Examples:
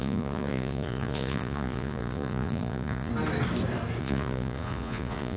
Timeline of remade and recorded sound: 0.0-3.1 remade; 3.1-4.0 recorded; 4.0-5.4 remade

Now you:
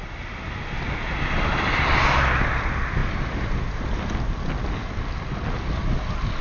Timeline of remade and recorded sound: 0.0-6.4 recorded

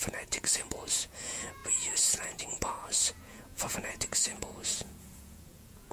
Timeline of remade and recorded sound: 0.0-5.9 remade

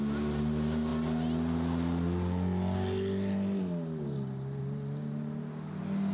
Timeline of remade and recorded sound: 0.0-6.1 recorded